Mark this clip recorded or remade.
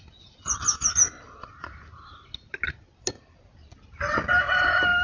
recorded